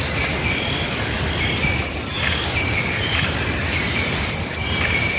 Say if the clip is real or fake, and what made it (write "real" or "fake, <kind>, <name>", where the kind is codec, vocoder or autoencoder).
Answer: real